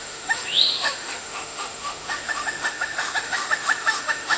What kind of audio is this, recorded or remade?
remade